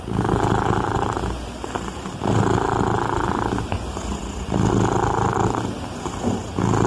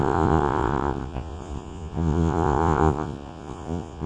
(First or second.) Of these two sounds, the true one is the first